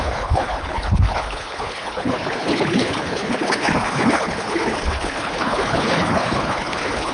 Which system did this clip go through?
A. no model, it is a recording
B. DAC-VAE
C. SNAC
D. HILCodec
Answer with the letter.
D